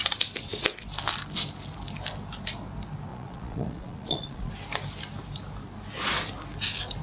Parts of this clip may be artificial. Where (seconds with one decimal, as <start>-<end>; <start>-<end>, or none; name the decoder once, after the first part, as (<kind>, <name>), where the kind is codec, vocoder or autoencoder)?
3.1-4.5 (vocoder, Vocos)